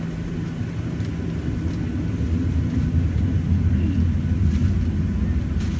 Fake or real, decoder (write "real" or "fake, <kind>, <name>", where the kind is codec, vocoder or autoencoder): real